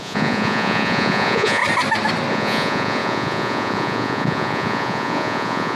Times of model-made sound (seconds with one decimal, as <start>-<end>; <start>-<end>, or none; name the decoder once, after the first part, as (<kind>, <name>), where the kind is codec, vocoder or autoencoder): 0.0-1.6 (vocoder, Vocos); 2.3-5.8